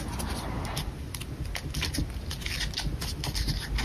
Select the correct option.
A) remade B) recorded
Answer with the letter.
B